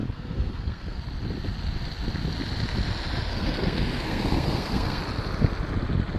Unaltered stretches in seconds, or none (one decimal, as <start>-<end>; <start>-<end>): 1.0-3.3; 5.0-6.2